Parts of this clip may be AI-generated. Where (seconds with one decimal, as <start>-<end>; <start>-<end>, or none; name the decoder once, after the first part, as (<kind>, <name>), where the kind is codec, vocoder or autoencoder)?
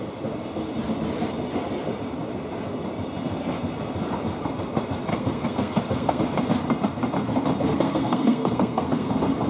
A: 5.1-6.2 (codec, SNAC); 7.7-9.1